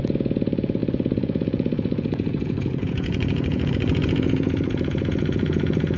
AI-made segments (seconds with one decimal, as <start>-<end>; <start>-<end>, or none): 0.0-6.0

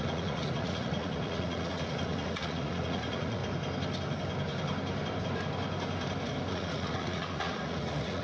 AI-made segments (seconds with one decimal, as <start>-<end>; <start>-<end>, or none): 0.0-3.4; 6.5-8.2

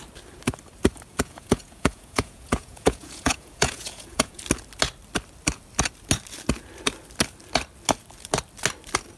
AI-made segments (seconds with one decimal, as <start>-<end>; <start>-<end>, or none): 1.1-4.4

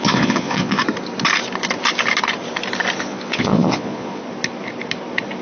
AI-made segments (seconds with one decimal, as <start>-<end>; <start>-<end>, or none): 0.0-0.8; 3.0-4.2

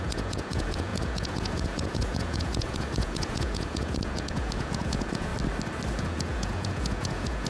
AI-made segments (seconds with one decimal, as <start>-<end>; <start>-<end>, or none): 0.0-5.3; 6.0-7.5

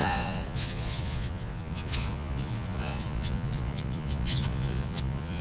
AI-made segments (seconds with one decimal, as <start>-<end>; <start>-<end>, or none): 0.0-5.4